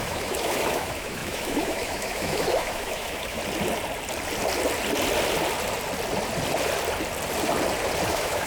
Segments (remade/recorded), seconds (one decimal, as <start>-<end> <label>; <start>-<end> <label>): 0.0-3.4 remade; 3.4-8.1 recorded; 8.1-8.5 remade